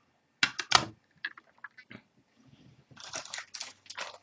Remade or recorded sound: recorded